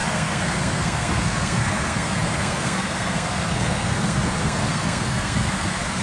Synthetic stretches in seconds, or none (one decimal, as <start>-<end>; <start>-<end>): 0.0-6.0